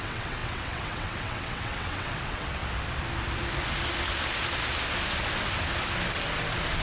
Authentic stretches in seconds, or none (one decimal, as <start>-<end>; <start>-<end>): 2.6-6.8